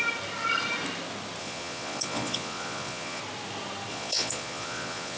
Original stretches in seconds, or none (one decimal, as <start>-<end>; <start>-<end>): 0.0-1.4; 3.2-3.9